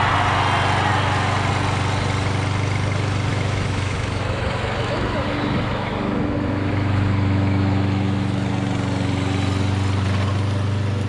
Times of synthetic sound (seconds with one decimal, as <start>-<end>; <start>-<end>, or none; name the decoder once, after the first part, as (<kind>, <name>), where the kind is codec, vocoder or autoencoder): 3.3-8.5 (autoencoder, DAC-VAE)